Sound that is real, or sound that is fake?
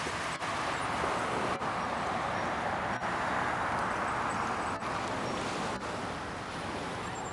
real